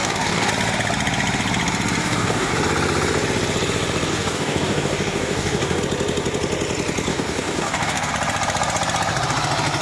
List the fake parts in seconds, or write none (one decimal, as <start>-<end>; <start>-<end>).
0.0-0.5; 2.0-2.5; 4.1-5.8; 7.1-8.1